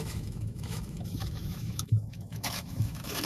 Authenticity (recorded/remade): remade